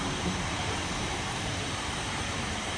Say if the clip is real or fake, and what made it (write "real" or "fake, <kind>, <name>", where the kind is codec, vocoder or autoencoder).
fake, vocoder, BigVGAN v2